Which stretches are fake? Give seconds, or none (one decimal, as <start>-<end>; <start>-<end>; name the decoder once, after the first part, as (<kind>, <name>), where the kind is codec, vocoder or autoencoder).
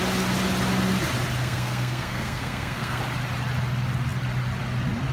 1.4-3.0 (codec, SNAC)